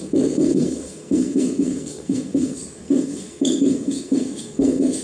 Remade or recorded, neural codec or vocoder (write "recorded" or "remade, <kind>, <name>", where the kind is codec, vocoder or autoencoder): remade, codec, SNAC